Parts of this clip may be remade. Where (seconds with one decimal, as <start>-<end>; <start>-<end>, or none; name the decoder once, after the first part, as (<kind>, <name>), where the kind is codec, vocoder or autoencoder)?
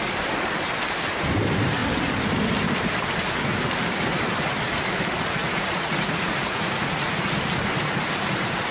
5.4-7.3 (vocoder, Vocos)